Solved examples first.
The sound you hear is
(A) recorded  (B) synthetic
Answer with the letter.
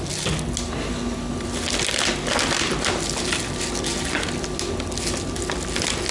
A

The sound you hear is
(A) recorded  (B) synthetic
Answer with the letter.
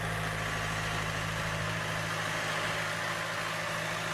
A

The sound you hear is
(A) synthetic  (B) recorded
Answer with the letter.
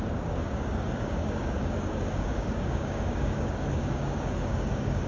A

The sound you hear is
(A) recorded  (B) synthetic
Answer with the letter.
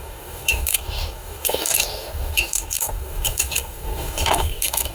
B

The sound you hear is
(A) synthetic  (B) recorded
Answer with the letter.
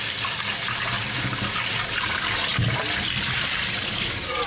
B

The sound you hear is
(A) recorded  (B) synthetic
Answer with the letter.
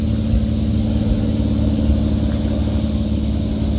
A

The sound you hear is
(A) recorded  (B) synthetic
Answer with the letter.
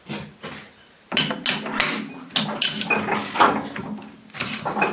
A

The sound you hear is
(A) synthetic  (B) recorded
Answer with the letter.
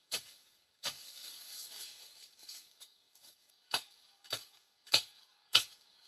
A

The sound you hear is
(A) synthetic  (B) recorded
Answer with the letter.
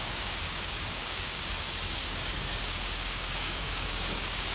A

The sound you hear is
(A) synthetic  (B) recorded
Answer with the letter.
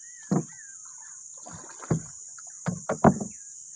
B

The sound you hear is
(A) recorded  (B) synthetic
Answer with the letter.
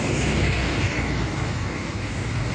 B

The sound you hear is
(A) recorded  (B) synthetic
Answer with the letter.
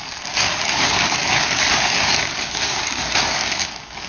B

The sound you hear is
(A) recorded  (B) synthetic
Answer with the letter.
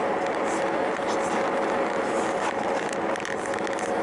A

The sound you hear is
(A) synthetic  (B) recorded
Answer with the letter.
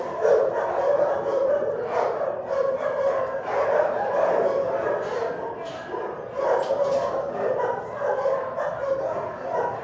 B